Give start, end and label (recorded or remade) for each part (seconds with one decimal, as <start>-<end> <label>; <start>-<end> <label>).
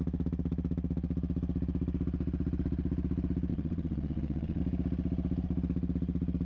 0.0-3.5 recorded; 3.5-4.6 remade; 4.6-6.5 recorded